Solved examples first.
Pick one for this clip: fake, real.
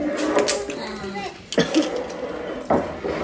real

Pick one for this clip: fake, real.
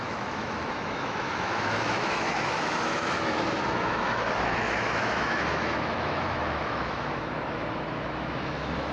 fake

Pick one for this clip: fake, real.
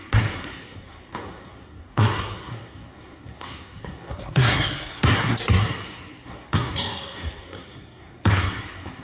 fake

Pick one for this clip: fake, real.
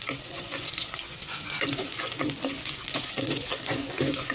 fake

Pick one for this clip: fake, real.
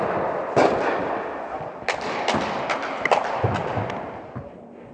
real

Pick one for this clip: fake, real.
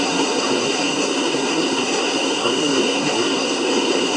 fake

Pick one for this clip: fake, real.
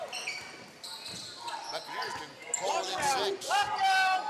real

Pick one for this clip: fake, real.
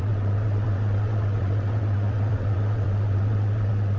fake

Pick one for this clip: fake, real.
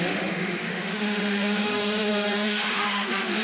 fake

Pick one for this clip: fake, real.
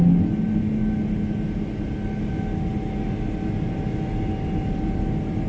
real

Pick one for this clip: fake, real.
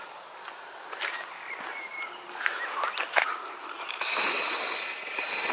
fake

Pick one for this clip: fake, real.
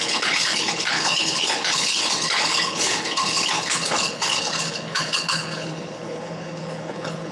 fake